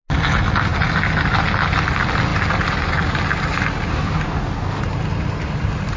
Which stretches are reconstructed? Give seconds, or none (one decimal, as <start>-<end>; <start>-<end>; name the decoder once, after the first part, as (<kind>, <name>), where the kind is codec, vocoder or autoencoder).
3.9-4.8 (codec, DAC)